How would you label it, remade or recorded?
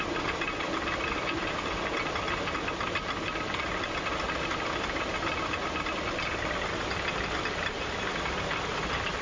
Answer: recorded